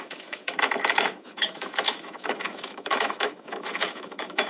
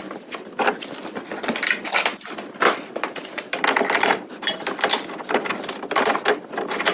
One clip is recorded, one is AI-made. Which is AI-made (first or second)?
first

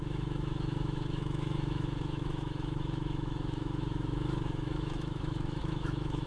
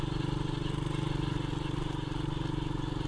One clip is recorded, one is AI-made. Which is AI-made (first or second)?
first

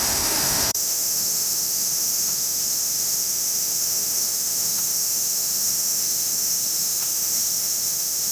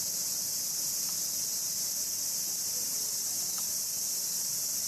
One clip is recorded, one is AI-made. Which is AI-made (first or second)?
first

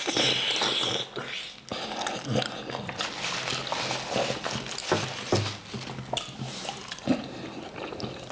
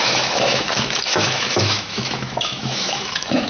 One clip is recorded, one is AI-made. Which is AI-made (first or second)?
second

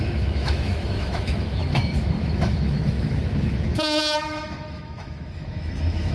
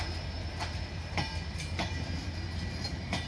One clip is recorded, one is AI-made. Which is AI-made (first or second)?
first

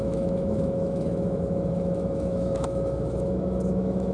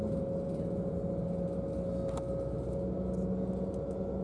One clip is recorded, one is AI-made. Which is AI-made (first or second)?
first